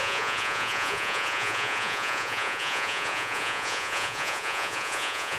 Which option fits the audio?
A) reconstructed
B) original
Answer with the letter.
A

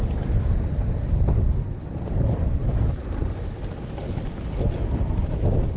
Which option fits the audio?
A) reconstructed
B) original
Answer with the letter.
B